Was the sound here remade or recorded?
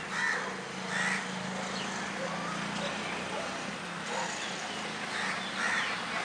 recorded